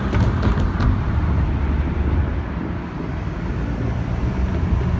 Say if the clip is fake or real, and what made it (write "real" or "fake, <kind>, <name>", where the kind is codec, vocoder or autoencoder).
real